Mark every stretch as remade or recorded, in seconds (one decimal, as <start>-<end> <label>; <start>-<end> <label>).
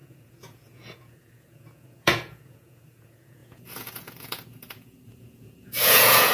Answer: 0.0-6.3 remade